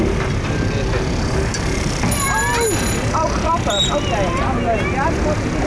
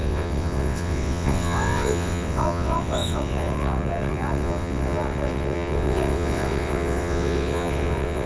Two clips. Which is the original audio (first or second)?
first